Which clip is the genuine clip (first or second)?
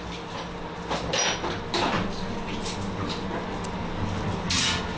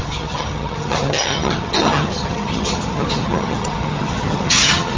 first